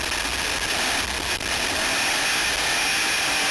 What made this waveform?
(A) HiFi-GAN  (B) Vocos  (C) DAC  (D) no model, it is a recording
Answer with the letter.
D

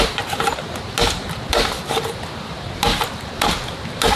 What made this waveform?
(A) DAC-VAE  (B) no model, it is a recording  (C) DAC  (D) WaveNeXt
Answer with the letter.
B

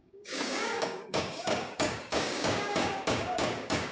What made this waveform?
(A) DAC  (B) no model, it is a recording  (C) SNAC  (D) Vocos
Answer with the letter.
A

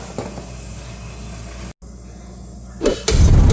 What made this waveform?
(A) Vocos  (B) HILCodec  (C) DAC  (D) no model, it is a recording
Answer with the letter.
D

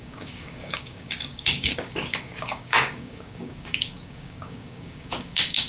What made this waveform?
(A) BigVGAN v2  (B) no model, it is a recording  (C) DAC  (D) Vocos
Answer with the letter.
C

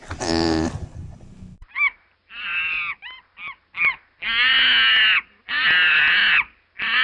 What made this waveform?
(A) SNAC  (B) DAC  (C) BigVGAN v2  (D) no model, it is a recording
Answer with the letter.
D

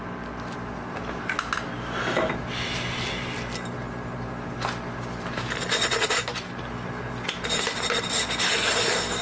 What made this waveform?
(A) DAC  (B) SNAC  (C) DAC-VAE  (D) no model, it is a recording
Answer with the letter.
D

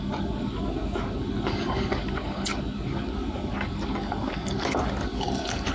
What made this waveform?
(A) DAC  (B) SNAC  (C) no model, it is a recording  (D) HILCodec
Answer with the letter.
A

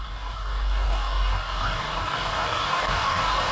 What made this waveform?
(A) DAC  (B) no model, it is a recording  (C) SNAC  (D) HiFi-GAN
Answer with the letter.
A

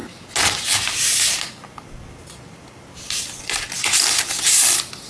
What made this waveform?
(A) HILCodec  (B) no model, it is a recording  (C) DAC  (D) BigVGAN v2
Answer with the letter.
B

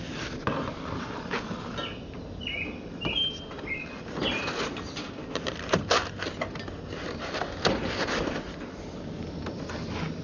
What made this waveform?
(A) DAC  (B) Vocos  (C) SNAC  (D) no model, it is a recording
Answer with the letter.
D